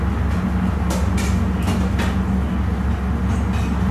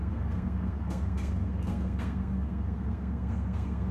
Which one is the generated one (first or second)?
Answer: second